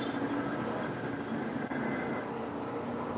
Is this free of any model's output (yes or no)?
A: yes